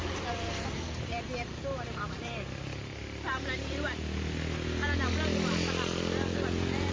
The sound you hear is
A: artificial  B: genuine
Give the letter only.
B